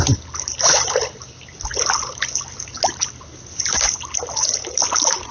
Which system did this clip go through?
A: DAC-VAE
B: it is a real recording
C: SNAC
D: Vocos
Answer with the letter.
B